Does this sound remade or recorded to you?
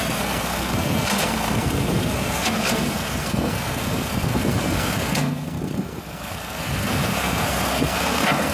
remade